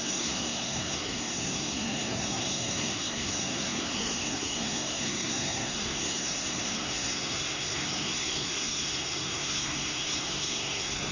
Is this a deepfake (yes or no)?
yes